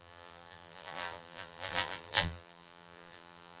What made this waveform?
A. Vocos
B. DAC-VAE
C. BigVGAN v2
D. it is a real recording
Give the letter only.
C